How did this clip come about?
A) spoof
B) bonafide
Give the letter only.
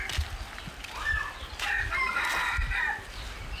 B